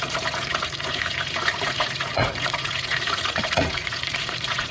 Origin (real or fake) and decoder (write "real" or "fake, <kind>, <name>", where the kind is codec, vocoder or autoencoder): fake, vocoder, Vocos